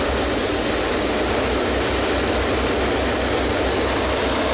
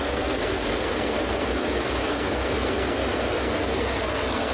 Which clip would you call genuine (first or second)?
first